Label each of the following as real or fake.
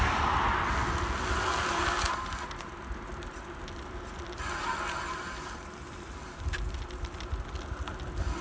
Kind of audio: real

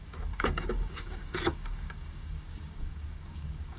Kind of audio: fake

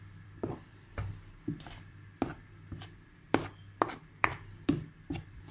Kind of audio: fake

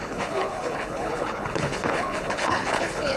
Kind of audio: fake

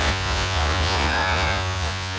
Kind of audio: fake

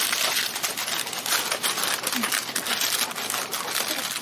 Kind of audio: real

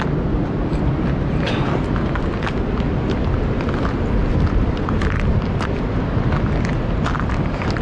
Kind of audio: real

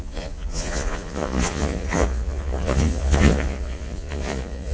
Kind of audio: fake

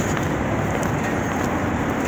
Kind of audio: real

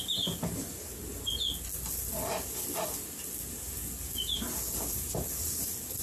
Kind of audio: real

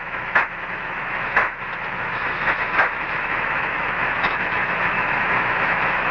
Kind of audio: fake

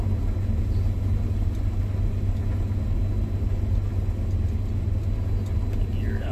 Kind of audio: real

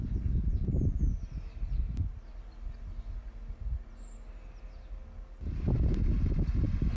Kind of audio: real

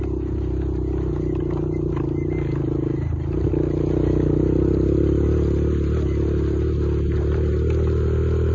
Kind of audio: real